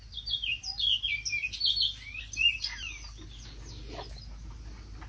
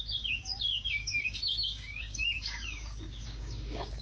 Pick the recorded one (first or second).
first